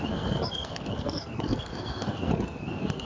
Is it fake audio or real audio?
fake